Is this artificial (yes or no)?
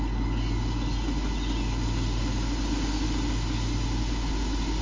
no